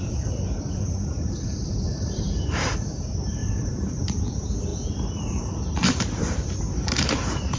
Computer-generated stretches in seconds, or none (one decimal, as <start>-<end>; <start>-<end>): 0.0-7.6